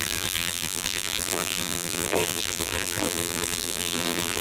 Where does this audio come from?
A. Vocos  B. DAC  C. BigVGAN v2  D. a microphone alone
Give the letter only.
C